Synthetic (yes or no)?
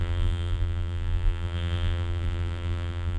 yes